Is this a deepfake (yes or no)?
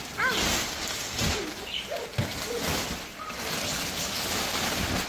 no